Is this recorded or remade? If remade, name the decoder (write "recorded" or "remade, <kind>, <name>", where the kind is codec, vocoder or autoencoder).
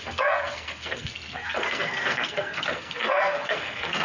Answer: remade, codec, SNAC